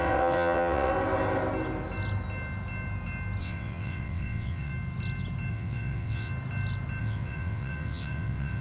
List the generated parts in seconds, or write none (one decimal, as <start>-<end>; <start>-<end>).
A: 0.0-0.9; 3.4-4.7; 5.5-6.3; 7.0-8.6